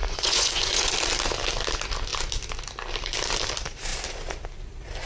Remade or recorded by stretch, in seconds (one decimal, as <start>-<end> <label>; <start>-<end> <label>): 0.0-0.9 remade; 0.9-5.1 recorded